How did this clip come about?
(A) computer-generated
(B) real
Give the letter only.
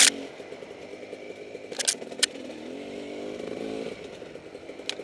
B